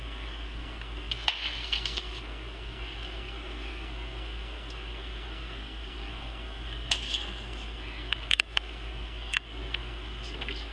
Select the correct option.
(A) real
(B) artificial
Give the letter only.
B